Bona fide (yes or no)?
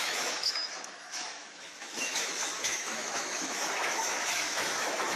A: no